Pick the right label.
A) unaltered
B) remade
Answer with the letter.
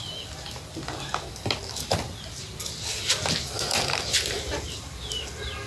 A